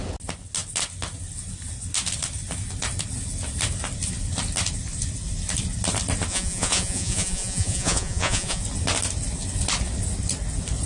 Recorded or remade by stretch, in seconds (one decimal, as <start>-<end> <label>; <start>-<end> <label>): 0.0-6.3 recorded; 6.3-8.6 remade; 8.6-10.9 recorded